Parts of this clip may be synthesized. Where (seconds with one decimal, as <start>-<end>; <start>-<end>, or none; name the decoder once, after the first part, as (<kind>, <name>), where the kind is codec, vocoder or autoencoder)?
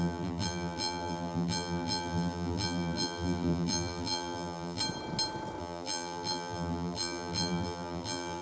0.0-4.8 (vocoder, BigVGAN v2); 5.6-8.4